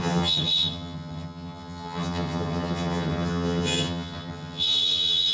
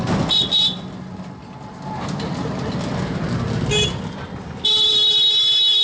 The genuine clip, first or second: second